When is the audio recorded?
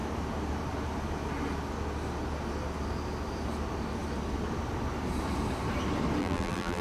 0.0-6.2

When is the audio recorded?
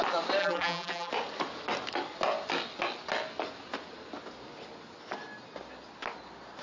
0.0-0.4; 1.1-6.6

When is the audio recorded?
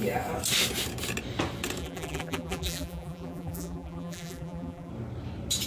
0.0-1.8; 4.9-5.7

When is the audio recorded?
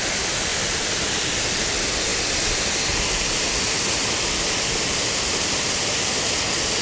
0.0-0.5; 1.2-6.8